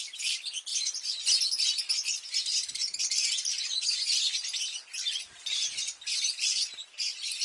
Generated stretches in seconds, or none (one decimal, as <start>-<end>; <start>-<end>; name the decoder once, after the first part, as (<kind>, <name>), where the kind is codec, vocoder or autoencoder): 0.0-0.7 (vocoder, BigVGAN v2); 3.0-6.5; 7.0-7.4